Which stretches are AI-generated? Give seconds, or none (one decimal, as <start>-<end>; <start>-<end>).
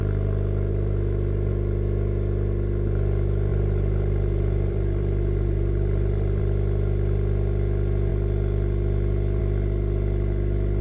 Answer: 0.7-1.5; 3.5-6.4